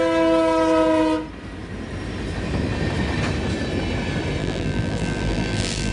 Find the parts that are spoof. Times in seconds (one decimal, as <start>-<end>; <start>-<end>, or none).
4.4-5.9